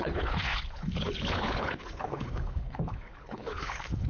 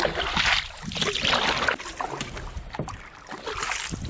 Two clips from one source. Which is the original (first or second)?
second